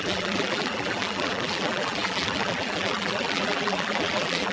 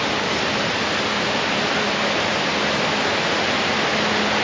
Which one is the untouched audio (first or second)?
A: second